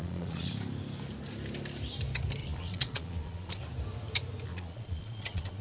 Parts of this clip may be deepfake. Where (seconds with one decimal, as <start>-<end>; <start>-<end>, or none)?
0.0-0.5; 2.4-3.6; 4.5-5.6